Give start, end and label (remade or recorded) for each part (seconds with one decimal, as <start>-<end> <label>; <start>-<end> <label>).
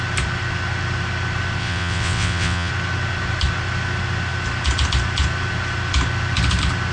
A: 0.0-1.6 recorded; 1.6-2.7 remade; 2.7-6.9 recorded